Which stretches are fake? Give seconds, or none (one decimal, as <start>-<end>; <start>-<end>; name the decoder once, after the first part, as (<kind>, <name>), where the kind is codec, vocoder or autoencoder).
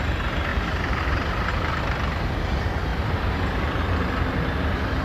0.5-1.8 (vocoder, BigVGAN v2); 2.9-3.8